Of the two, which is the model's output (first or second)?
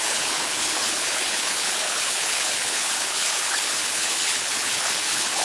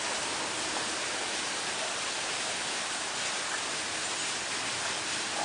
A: first